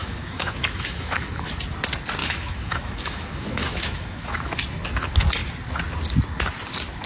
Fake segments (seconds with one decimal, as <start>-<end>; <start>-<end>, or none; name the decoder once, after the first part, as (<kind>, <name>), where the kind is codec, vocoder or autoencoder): 0.0-1.6 (autoencoder, DAC-VAE); 2.2-4.5